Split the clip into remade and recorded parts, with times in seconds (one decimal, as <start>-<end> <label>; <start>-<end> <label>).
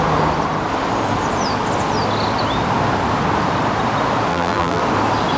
0.0-4.3 recorded; 4.3-4.8 remade; 4.8-5.4 recorded